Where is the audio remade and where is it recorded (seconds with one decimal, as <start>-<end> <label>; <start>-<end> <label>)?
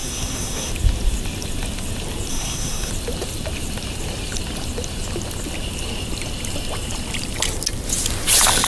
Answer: 0.0-0.7 remade; 0.7-2.3 recorded; 2.3-2.9 remade; 2.9-8.7 recorded